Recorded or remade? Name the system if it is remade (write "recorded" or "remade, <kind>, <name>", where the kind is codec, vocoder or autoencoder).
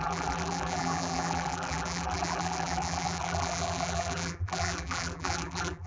remade, vocoder, BigVGAN v2